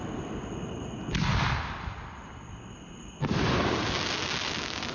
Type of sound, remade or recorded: recorded